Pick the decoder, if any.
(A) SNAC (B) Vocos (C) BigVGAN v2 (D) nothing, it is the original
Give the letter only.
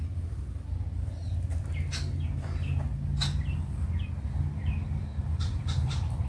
D